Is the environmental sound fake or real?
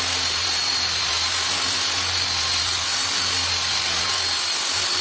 real